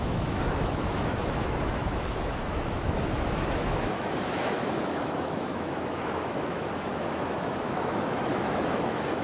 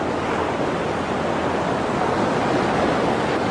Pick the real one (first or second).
second